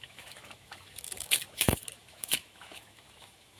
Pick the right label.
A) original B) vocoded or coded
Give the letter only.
B